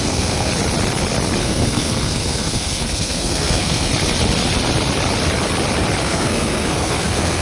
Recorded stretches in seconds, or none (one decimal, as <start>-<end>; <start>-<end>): 0.5-1.4; 3.9-6.0